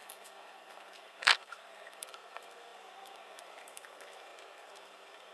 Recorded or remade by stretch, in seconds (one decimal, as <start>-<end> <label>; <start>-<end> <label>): 0.0-5.3 remade